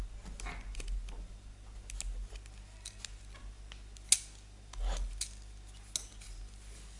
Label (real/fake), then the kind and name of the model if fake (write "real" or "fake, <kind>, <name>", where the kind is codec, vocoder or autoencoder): real